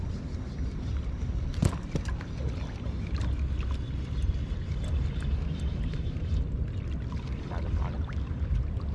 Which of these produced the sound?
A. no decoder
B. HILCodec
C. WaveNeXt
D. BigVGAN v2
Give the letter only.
A